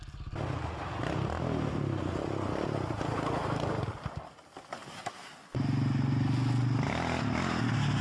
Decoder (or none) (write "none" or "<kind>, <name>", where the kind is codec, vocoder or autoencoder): none